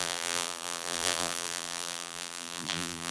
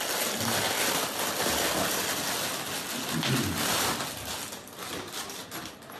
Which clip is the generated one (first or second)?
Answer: first